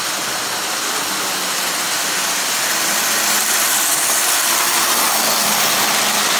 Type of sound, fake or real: real